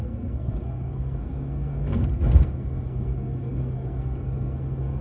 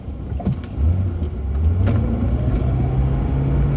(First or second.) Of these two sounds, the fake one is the first